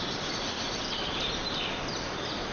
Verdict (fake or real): fake